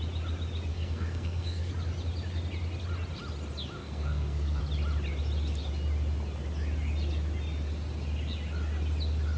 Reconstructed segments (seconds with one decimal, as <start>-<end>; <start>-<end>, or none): 0.7-1.7; 3.8-4.6